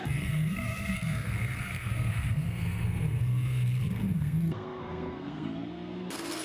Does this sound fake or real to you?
fake